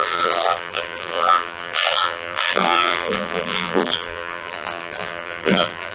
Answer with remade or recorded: remade